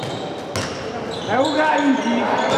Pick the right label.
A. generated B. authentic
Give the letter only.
B